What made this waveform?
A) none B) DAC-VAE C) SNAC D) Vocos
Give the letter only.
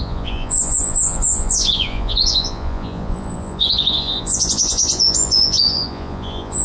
D